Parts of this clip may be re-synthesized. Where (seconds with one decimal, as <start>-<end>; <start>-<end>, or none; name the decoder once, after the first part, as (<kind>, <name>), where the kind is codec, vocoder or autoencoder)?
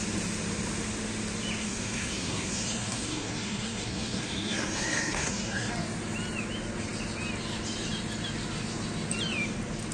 1.6-5.7 (codec, SNAC)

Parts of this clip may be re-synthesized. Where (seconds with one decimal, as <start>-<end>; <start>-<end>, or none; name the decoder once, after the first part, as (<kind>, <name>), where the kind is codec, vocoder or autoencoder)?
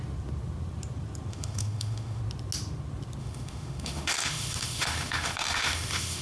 1.3-2.2 (autoencoder, DAC-VAE); 3.2-6.2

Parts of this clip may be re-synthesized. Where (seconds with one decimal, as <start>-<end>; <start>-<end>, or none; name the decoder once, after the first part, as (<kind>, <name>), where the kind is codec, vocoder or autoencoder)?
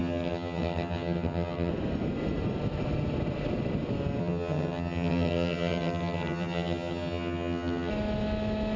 0.0-1.7 (vocoder, HiFi-GAN); 4.2-7.9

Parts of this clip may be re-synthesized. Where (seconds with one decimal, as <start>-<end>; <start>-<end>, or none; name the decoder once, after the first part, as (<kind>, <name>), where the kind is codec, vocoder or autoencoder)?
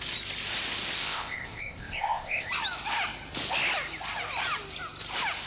1.0-2.5 (codec, ZipCodec)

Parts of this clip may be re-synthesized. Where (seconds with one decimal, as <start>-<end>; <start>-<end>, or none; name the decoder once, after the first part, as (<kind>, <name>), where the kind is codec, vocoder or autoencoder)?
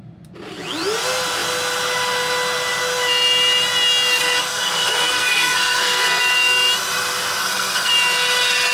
4.5-6.2 (codec, SNAC); 7.4-7.9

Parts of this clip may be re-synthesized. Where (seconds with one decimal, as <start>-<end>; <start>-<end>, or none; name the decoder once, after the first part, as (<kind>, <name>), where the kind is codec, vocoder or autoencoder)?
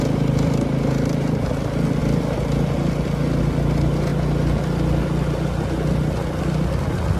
none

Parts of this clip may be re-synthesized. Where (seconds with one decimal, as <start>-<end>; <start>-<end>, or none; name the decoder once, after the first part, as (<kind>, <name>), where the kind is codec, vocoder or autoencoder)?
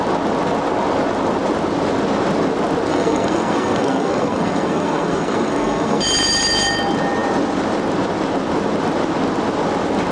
2.9-6.0 (codec, SNAC)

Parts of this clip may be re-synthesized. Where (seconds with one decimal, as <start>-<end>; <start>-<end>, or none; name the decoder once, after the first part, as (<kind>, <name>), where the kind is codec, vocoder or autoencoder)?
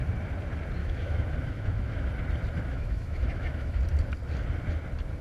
0.8-2.1 (autoencoder, DAC-VAE); 2.7-3.8